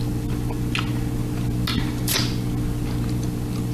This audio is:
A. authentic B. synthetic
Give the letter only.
A